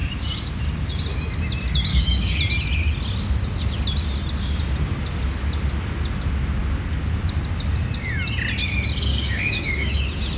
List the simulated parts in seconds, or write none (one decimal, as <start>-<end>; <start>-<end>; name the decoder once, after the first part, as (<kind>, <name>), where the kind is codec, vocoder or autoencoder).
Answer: 1.9-2.4 (codec, DAC); 9.1-10.0